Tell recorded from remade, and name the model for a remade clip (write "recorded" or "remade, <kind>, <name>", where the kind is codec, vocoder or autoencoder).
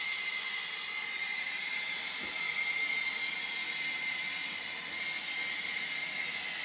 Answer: recorded